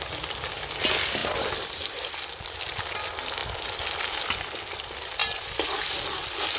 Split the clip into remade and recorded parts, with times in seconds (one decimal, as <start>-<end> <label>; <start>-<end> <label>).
0.0-1.2 recorded; 1.2-2.6 remade; 2.6-5.2 recorded; 5.2-6.6 remade